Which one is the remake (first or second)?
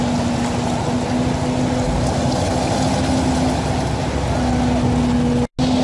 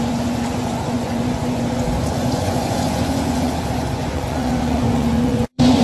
second